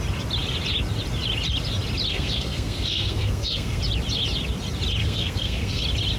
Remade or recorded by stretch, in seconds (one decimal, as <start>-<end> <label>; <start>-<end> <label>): 0.0-2.1 recorded; 2.1-3.8 remade; 3.8-5.0 recorded; 5.0-5.8 remade; 5.8-6.2 recorded